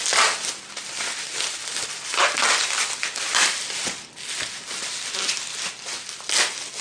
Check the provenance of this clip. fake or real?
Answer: real